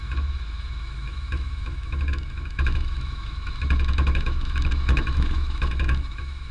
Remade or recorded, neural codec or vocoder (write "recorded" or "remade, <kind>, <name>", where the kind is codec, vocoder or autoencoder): remade, autoencoder, DAC-VAE